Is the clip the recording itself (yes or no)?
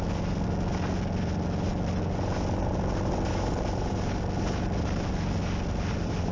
yes